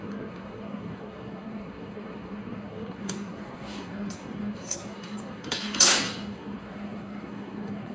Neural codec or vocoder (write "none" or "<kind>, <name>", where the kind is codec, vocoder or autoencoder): codec, SNAC